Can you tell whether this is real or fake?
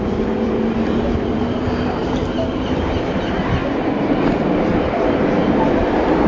fake